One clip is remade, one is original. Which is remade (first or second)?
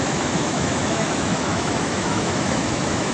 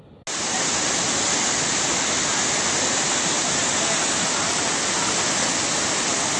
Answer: first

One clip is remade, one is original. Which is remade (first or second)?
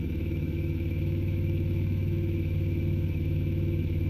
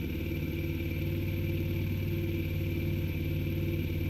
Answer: first